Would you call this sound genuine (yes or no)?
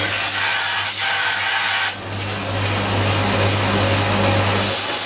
yes